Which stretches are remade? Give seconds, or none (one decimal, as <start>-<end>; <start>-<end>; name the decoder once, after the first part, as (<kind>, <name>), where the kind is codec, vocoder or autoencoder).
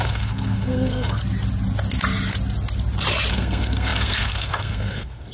0.0-1.2 (codec, SNAC); 3.3-5.3